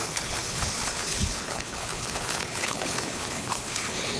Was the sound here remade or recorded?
remade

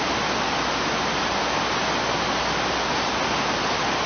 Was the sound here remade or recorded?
recorded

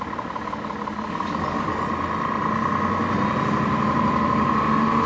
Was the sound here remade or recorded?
recorded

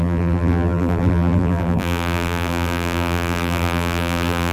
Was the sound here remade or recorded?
remade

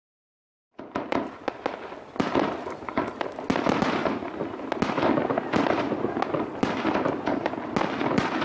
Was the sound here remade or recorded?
recorded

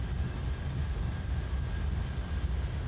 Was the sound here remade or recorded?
recorded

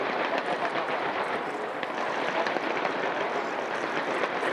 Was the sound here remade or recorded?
recorded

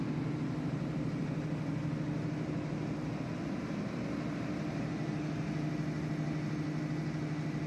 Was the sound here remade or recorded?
recorded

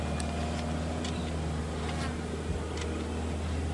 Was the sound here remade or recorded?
recorded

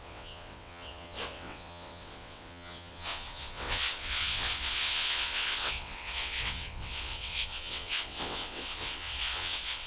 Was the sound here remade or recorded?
remade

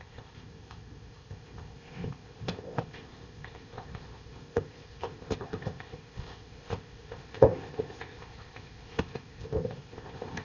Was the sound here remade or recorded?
remade